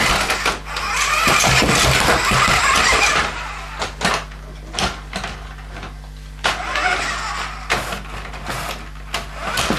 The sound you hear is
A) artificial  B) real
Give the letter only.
B